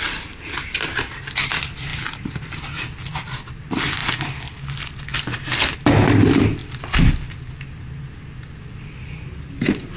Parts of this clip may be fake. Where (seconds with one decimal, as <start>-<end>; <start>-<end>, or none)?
none